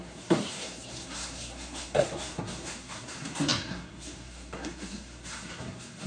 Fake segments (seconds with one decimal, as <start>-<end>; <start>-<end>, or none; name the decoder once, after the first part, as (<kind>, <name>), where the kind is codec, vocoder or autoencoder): 0.0-6.1 (codec, SNAC)